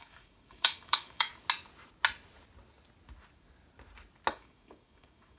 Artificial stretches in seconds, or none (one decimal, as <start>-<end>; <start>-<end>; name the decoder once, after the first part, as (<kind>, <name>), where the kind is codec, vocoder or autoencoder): 0.0-1.3 (codec, DAC); 4.3-5.4